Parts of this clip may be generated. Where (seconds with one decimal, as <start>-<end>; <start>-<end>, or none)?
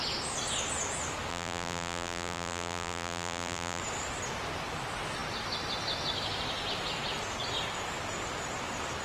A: 1.3-3.8